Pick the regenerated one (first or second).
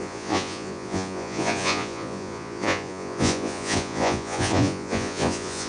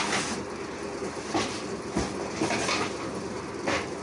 first